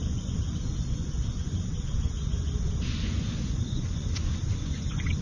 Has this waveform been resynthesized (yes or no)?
yes